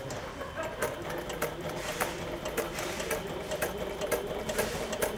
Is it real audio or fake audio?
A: real